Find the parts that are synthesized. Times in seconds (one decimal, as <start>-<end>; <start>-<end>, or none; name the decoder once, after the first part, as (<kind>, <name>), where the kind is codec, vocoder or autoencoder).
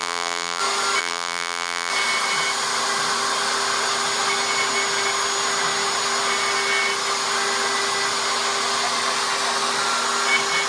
0.0-0.6 (vocoder, BigVGAN v2); 1.0-1.9